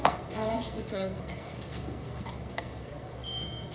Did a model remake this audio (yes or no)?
yes